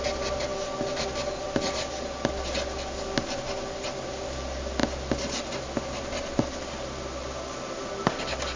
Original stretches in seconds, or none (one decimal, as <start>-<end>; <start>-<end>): 0.0-8.6